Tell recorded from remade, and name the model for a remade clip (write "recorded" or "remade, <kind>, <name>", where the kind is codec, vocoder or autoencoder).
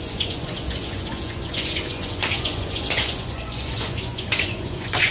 remade, vocoder, Vocos